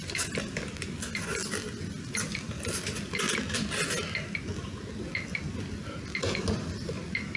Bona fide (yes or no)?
yes